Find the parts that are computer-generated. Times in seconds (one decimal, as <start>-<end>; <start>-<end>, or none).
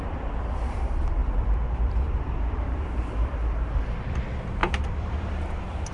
0.0-5.9